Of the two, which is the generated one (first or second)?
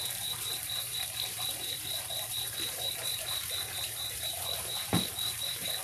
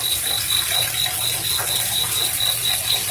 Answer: first